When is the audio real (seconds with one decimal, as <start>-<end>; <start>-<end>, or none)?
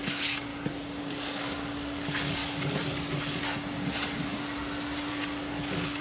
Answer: 0.5-1.0; 2.4-5.1